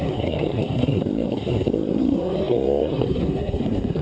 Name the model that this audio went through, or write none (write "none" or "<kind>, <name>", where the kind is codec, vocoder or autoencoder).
codec, SNAC